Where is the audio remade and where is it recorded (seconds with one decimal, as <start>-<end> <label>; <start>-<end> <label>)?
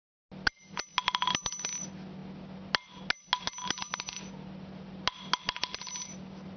0.0-6.6 recorded